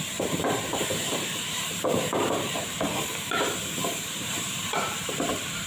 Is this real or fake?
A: fake